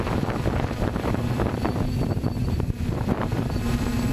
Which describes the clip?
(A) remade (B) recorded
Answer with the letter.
A